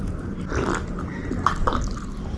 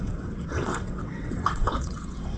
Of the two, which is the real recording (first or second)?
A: first